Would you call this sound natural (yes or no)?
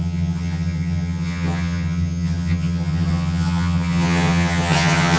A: no